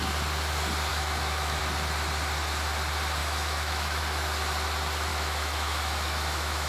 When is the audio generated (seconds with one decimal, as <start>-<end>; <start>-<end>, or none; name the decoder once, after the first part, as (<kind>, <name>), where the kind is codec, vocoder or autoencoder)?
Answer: 0.9-1.6 (autoencoder, DAC-VAE); 3.2-4.0; 5.1-6.7